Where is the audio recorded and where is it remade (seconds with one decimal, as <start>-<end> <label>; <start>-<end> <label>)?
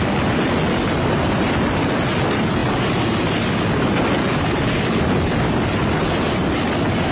0.0-7.1 recorded